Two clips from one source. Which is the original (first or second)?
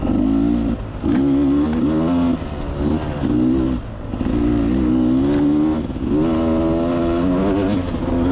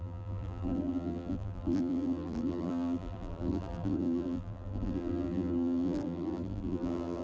first